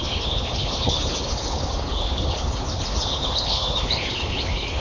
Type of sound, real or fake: fake